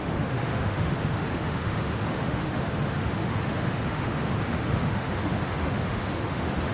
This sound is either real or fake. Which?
fake